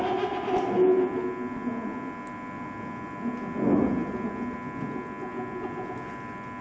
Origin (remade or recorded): recorded